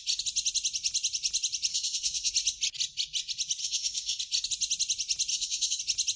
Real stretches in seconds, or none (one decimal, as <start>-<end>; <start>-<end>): 0.0-1.7; 2.3-3.6; 4.2-5.3; 5.8-6.2